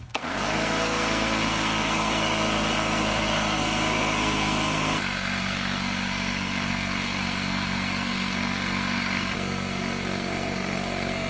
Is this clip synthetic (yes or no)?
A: yes